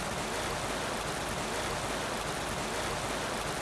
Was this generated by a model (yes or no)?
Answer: no